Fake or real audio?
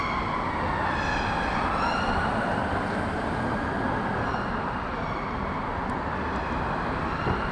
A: real